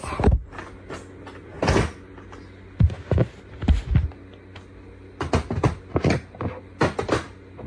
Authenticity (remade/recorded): recorded